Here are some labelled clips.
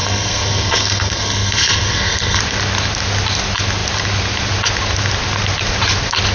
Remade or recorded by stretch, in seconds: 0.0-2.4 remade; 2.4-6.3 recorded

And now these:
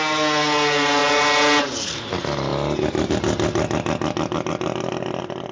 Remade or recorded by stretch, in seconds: 0.0-5.5 recorded

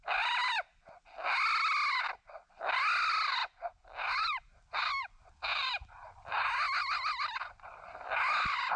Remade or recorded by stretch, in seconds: 0.0-8.8 recorded

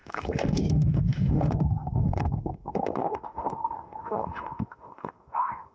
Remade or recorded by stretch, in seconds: 0.0-5.7 remade

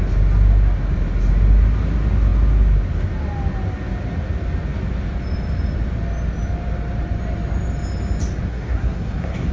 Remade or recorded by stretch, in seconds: 0.0-8.5 recorded; 8.5-9.5 remade

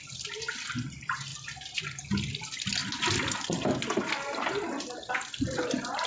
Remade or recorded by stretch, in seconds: 0.0-2.8 remade; 2.8-5.1 recorded; 5.1-6.1 remade

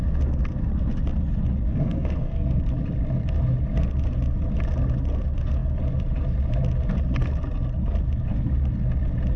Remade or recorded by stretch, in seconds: 0.0-1.7 recorded; 1.7-2.6 remade; 2.6-9.4 recorded

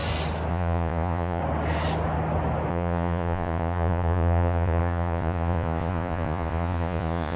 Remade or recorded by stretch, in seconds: 0.0-0.5 recorded; 0.5-1.4 remade; 1.4-2.7 recorded; 2.7-7.4 remade